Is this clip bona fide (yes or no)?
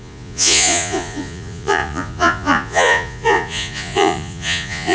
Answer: no